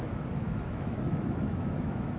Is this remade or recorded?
remade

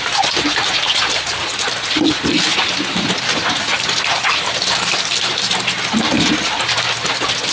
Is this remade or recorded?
recorded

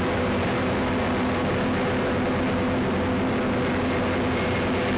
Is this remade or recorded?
recorded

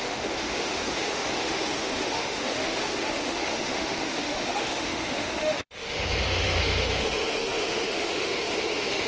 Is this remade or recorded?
remade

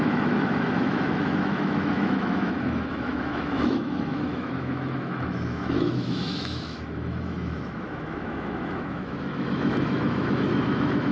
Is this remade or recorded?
remade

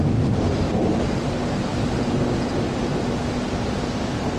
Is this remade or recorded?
recorded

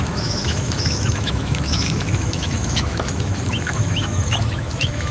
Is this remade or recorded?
remade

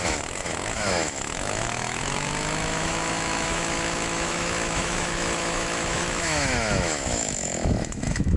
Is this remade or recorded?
remade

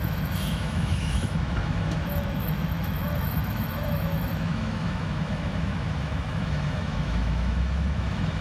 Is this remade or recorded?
remade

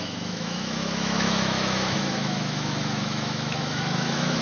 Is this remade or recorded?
remade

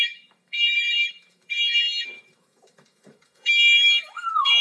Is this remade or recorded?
remade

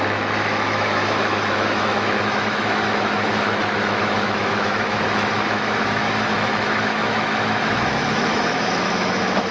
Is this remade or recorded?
remade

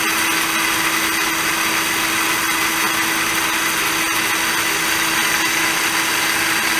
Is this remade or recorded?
recorded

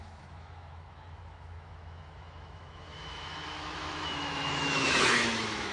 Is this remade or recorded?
remade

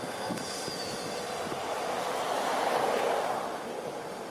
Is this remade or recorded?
recorded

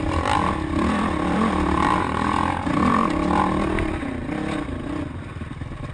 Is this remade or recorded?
recorded